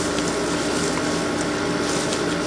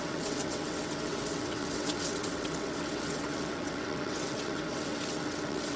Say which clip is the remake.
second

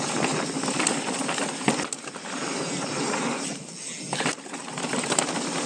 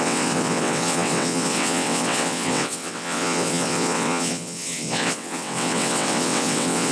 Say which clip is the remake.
second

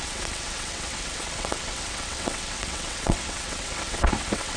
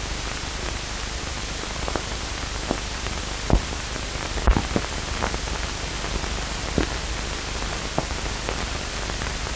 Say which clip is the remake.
first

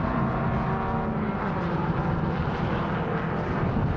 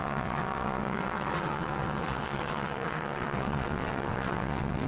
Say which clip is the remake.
second